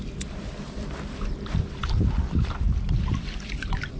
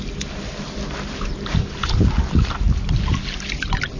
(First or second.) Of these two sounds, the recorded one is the second